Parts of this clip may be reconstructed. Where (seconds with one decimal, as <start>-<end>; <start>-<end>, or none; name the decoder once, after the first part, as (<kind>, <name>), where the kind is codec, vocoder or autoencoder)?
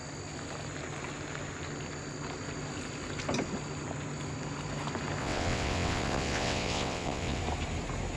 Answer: 5.2-7.4 (vocoder, WaveNeXt)